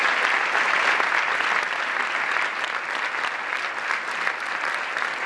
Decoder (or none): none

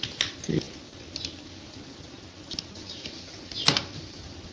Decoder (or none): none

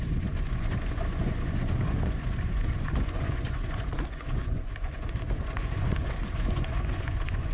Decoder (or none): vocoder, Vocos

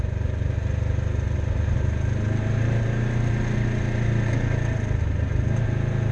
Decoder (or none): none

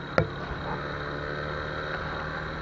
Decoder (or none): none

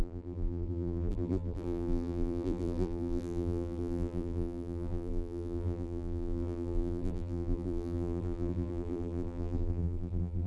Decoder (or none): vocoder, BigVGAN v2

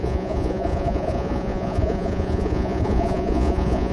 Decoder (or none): vocoder, Vocos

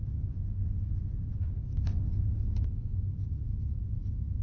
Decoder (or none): none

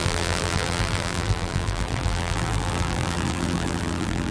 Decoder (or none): vocoder, BigVGAN v2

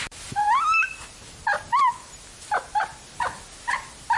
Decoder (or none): none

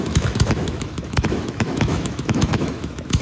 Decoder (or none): autoencoder, DAC-VAE